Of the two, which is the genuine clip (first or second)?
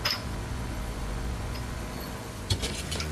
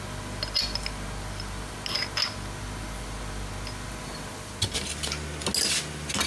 second